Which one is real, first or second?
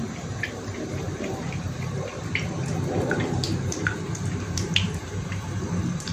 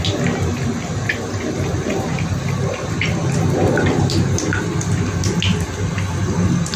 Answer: second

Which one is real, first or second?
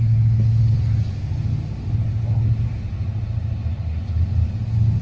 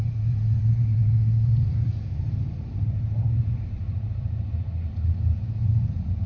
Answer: first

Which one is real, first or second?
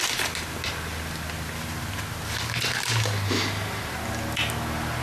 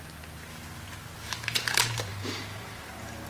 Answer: first